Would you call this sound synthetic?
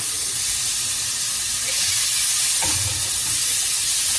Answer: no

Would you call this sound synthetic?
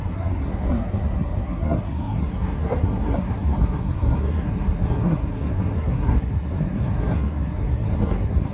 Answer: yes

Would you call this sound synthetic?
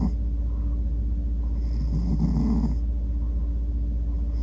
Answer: no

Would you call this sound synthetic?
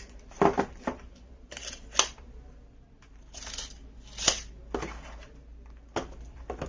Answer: no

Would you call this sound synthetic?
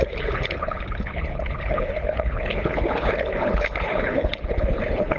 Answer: yes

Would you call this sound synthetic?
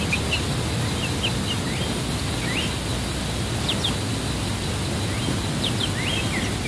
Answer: no